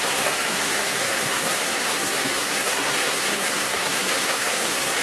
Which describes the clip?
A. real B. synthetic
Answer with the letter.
B